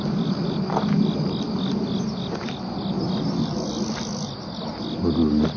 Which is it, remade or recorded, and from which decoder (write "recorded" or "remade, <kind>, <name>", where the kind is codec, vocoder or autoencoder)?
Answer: recorded